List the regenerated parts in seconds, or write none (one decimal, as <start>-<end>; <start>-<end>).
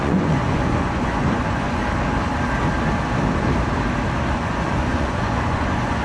0.0-1.8; 4.3-6.0